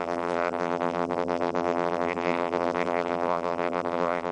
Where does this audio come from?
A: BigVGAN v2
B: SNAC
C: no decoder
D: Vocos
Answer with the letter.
A